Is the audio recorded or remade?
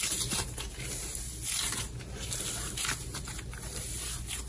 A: recorded